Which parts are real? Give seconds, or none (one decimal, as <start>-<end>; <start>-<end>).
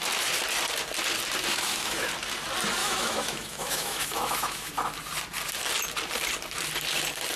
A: 0.0-1.5; 2.1-2.8; 4.7-7.4